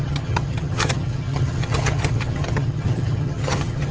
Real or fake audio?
fake